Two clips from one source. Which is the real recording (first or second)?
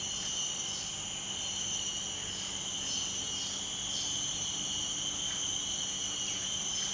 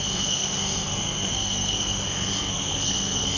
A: first